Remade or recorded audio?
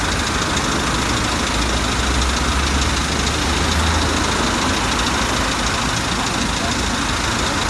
recorded